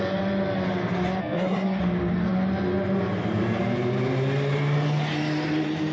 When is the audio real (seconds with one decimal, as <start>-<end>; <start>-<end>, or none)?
0.0-1.2; 1.8-5.9